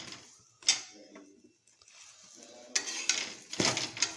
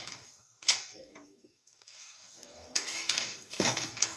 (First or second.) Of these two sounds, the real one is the first